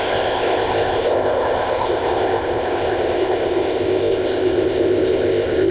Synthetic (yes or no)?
yes